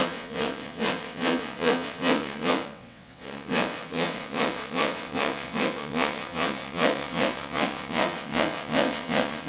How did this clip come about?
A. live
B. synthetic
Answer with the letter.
B